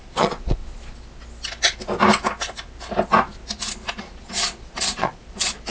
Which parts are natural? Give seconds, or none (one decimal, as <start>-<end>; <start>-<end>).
0.6-4.0